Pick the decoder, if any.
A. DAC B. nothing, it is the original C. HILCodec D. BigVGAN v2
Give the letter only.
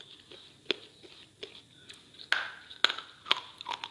B